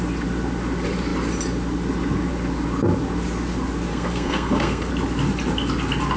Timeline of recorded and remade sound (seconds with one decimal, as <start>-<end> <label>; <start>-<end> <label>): 0.0-3.9 recorded; 3.9-4.9 remade; 4.9-6.2 recorded